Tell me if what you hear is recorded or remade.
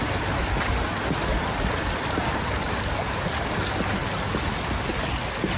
recorded